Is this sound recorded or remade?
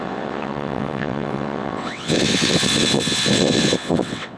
remade